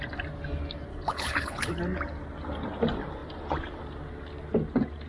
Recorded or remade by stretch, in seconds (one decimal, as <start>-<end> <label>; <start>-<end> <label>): 0.0-0.9 recorded; 0.9-1.7 remade; 1.7-5.1 recorded